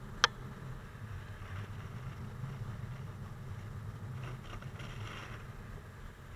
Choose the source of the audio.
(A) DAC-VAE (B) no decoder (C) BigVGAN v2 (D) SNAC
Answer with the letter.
B